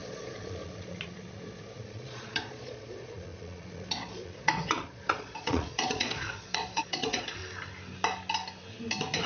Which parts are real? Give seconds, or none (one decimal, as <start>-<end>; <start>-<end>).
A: 7.4-9.3